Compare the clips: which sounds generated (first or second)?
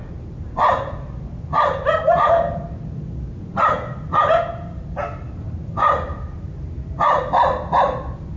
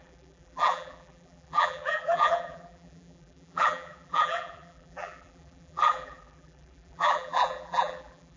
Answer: second